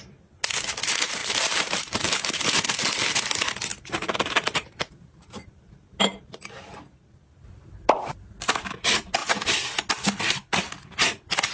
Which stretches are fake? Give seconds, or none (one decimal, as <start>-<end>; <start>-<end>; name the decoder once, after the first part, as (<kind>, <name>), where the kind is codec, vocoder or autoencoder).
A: 1.2-2.4 (vocoder, BigVGAN v2); 3.7-6.0